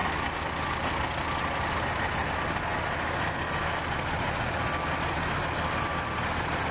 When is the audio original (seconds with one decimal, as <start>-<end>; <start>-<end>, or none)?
0.0-6.7